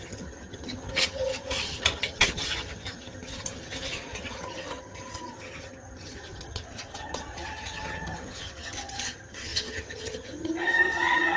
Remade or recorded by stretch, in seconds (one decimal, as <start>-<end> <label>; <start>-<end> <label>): 0.0-11.4 remade